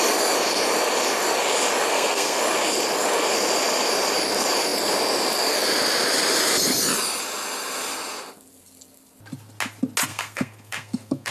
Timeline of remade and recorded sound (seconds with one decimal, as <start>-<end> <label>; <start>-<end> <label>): 0.0-1.9 recorded; 1.9-2.4 remade; 2.4-10.1 recorded; 10.1-11.3 remade